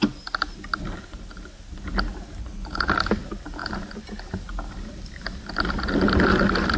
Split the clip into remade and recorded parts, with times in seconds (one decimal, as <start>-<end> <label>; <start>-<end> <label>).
0.0-2.4 recorded; 2.4-2.9 remade; 2.9-6.8 recorded